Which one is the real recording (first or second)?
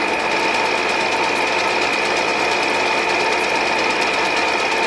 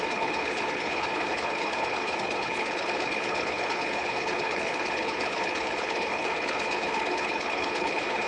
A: first